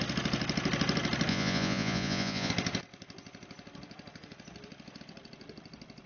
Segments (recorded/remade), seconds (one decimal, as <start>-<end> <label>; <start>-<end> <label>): 0.0-1.3 recorded; 1.3-2.5 remade; 2.5-6.1 recorded